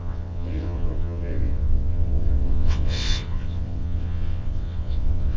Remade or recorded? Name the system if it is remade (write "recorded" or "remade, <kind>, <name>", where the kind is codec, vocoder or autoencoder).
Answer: remade, vocoder, WaveNeXt